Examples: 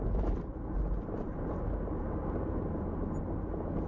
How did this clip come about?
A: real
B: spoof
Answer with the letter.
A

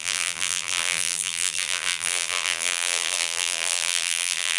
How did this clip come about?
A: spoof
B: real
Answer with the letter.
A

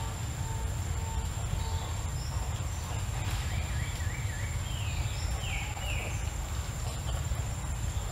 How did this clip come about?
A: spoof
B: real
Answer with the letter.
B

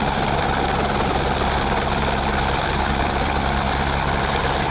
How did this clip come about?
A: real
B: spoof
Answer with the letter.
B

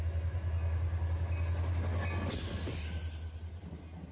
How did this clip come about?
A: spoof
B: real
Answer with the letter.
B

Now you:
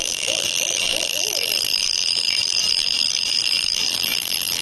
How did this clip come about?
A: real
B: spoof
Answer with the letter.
B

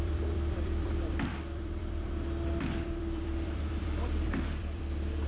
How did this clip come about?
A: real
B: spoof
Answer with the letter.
B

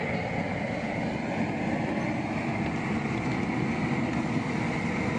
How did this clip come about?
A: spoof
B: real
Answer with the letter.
B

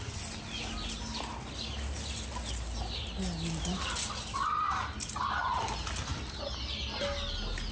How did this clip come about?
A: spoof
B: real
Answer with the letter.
B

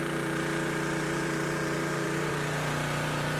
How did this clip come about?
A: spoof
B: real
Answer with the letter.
A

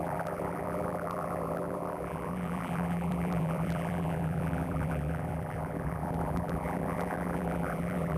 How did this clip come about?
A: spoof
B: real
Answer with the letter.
A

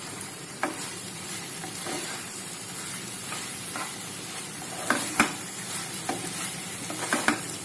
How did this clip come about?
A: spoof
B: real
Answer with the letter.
A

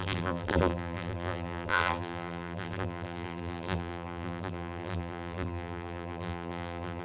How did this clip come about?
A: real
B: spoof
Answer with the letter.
B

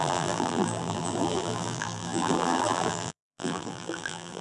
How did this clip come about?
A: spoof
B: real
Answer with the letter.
A